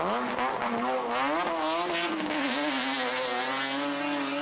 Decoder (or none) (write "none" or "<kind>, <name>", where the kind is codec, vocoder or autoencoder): none